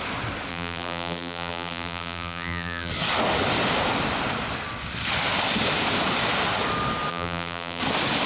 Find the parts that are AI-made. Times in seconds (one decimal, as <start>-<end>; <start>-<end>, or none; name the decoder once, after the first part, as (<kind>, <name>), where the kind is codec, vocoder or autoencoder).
0.5-2.9 (vocoder, BigVGAN v2); 7.1-7.8